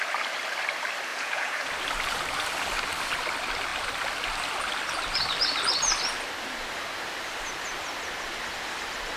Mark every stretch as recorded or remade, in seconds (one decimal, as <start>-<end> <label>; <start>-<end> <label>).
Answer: 0.0-1.1 recorded; 1.1-1.7 remade; 1.7-9.2 recorded